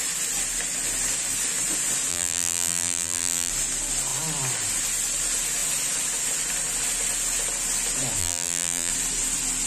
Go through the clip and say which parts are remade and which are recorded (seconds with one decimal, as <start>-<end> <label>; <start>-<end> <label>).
0.0-2.1 recorded; 2.1-3.5 remade; 3.5-8.2 recorded; 8.2-8.9 remade; 8.9-9.7 recorded